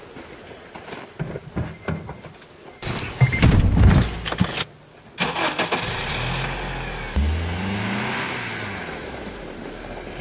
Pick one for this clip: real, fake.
real